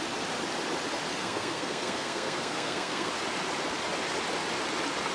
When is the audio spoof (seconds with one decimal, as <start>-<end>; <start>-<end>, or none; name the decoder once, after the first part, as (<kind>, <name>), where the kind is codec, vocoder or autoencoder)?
1.1-3.1 (codec, SNAC)